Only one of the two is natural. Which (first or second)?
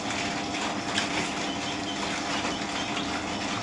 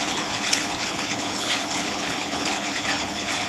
first